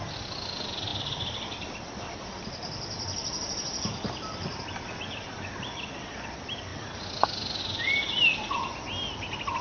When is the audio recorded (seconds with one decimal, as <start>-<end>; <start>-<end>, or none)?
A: 0.0-0.9; 4.6-9.6